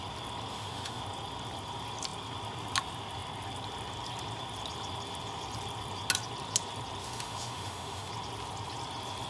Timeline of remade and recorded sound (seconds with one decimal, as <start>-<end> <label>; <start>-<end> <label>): 0.0-0.5 recorded; 0.5-1.0 remade; 1.0-7.0 recorded; 7.0-8.1 remade; 8.1-9.3 recorded